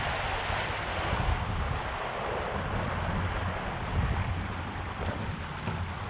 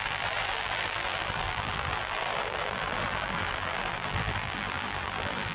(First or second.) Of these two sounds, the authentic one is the first